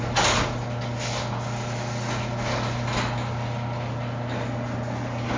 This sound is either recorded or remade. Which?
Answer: recorded